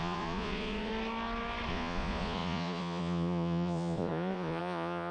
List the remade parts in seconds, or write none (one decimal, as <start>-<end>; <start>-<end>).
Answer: 0.0-0.9; 1.7-5.1